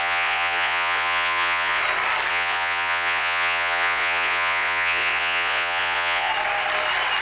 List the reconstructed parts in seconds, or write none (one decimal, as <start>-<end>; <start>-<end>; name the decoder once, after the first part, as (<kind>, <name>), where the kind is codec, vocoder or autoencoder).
0.0-1.8 (vocoder, Vocos); 2.3-6.3